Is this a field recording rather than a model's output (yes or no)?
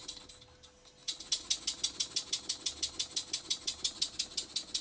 yes